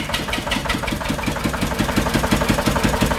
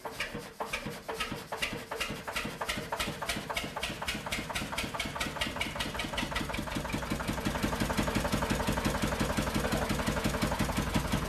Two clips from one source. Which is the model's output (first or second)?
first